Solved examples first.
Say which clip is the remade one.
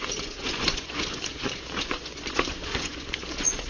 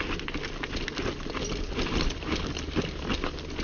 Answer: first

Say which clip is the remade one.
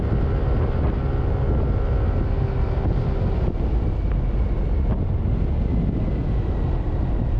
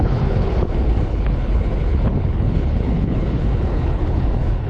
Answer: second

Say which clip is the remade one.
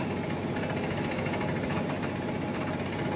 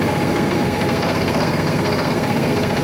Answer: second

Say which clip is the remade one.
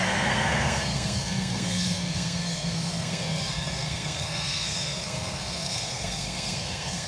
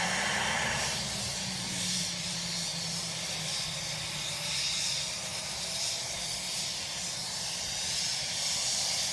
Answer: first